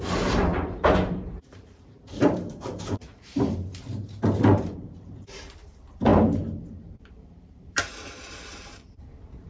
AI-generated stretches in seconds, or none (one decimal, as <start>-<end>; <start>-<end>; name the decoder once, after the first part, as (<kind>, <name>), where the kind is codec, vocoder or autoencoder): 0.0-9.5 (vocoder, BigVGAN v2)